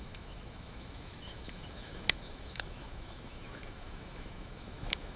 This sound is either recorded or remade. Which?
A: remade